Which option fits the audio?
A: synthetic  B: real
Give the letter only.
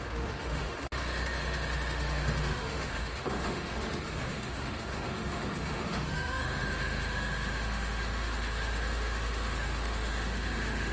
A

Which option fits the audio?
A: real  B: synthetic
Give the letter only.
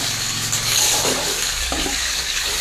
B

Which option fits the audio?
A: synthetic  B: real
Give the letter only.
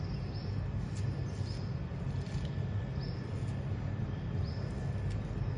B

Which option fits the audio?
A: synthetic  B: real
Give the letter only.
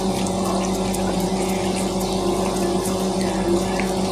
B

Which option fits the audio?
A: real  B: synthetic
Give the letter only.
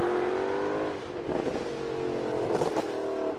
A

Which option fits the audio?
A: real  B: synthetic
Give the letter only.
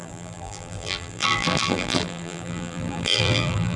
B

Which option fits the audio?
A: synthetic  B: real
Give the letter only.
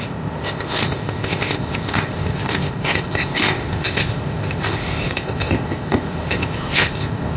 A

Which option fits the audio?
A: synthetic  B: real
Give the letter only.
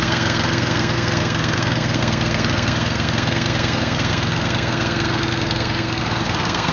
A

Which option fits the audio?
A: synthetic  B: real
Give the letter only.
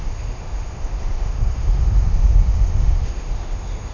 A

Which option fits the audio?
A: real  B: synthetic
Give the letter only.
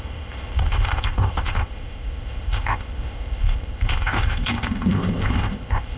B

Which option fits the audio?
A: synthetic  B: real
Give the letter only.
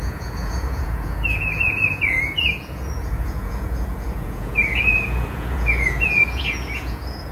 A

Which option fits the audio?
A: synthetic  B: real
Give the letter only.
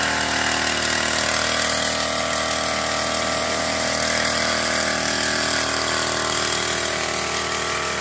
B